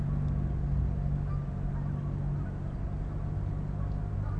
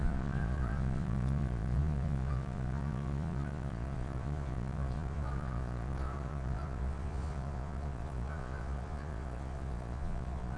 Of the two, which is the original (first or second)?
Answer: first